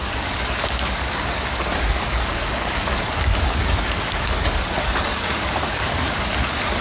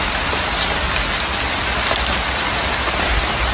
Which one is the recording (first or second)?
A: second